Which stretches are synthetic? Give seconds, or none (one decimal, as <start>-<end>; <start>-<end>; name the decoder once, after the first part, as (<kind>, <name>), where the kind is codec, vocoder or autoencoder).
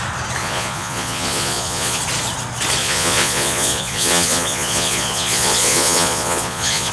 0.4-2.0 (vocoder, Vocos); 2.8-6.9